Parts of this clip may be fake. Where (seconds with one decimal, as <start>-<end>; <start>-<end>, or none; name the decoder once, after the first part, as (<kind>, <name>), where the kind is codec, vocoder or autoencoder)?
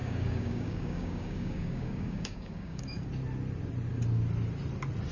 0.0-3.1 (codec, DAC)